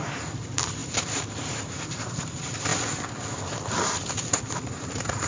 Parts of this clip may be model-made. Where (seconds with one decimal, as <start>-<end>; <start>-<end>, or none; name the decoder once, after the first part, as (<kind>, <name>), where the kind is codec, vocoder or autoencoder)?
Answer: 0.0-2.7 (vocoder, BigVGAN v2); 4.8-5.3